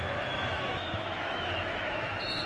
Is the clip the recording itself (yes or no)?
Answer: no